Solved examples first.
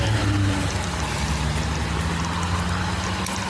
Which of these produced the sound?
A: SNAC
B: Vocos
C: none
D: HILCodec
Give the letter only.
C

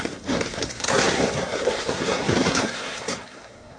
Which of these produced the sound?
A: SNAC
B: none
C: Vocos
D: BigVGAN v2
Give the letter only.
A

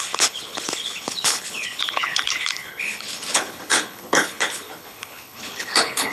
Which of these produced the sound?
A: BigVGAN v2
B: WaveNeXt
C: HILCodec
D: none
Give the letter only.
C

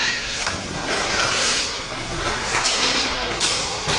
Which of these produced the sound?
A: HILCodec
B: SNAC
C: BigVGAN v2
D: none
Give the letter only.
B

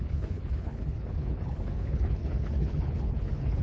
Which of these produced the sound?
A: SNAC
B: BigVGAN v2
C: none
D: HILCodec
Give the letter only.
D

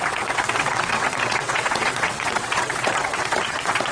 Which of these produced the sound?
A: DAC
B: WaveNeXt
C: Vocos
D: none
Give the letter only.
B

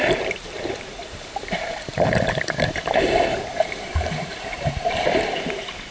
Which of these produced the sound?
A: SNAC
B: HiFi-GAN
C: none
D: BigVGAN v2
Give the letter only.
D